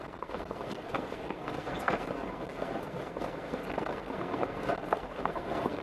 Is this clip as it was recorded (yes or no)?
no